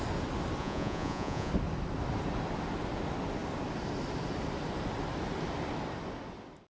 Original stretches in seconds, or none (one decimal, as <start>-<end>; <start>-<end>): 0.0-0.6; 1.5-6.7